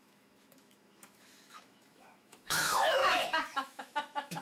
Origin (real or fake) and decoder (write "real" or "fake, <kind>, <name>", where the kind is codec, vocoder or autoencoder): fake, autoencoder, DAC-VAE